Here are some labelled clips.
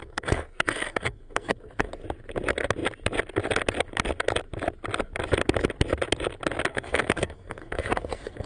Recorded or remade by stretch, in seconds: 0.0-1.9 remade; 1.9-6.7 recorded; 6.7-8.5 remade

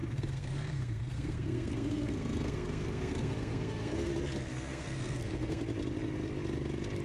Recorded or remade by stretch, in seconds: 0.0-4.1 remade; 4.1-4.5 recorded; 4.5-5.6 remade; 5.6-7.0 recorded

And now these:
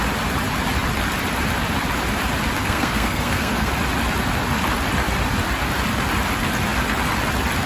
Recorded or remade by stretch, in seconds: 0.0-2.6 recorded; 2.6-3.7 remade; 3.7-7.7 recorded

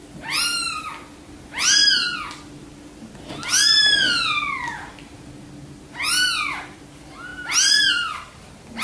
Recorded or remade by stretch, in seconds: 0.0-8.8 recorded

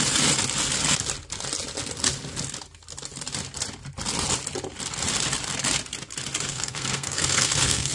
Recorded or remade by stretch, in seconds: 0.0-6.5 recorded; 6.5-7.9 remade

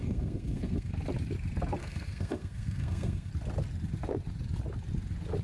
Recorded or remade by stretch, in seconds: 0.0-0.9 remade; 0.9-1.8 recorded; 1.8-3.3 remade; 3.3-5.4 recorded

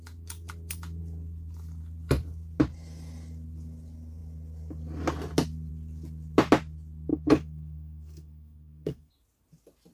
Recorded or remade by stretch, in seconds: 0.0-7.1 recorded; 7.1-9.1 remade; 9.1-9.9 recorded

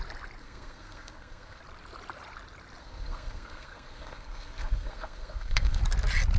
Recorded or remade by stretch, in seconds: 0.0-0.4 recorded; 0.4-1.6 remade; 1.6-2.8 recorded; 2.8-5.8 remade; 5.8-6.4 recorded